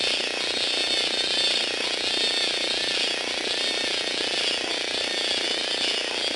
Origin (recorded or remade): recorded